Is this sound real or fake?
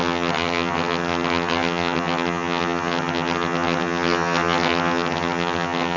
fake